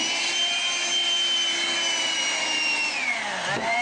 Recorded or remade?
recorded